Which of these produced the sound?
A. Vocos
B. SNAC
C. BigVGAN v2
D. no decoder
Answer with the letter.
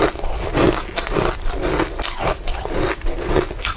D